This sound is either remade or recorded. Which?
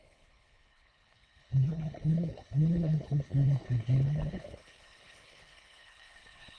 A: remade